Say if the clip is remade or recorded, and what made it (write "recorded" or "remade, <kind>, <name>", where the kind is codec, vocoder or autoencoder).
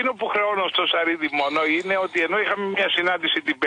recorded